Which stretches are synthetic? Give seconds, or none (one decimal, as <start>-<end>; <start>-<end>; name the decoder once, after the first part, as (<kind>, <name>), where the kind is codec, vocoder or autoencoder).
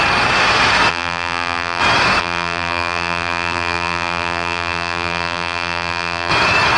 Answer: 0.9-1.8 (vocoder, BigVGAN v2); 2.2-6.3